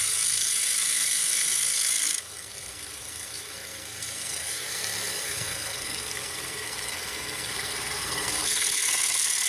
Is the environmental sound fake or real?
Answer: fake